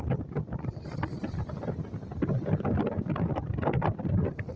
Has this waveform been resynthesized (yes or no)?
no